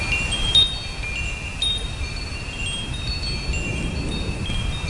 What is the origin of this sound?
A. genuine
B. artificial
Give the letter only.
A